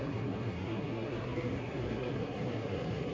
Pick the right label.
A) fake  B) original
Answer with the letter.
A